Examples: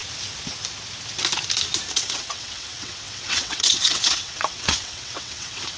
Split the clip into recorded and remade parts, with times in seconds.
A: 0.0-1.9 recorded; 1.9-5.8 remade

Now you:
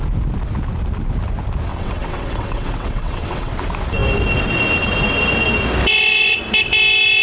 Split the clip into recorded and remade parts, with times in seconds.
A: 0.0-1.7 recorded; 1.7-3.5 remade; 3.5-5.8 recorded; 5.8-6.4 remade; 6.4-7.2 recorded